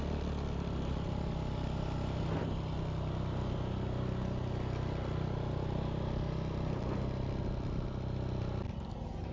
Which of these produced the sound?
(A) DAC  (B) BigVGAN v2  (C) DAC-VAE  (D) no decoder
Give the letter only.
D